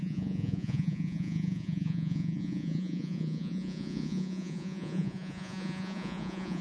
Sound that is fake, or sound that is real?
fake